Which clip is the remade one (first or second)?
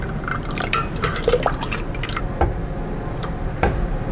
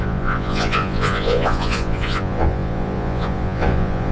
second